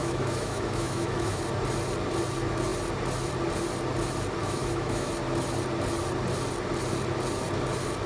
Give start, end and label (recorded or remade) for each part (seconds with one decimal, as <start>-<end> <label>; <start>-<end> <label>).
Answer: 0.0-1.4 remade; 1.4-4.4 recorded; 4.4-5.1 remade; 5.1-8.1 recorded

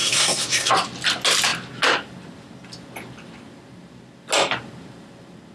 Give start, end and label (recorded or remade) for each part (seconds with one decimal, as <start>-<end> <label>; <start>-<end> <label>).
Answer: 0.0-0.7 remade; 0.7-5.5 recorded